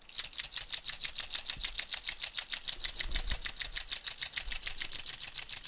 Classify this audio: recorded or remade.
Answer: recorded